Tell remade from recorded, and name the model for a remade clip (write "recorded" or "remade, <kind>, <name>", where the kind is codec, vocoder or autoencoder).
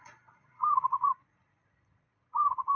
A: remade, vocoder, Vocos